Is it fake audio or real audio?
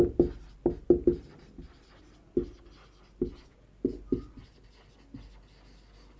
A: real